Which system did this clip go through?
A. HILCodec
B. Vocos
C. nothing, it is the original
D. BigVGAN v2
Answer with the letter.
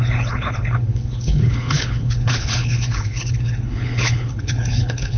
A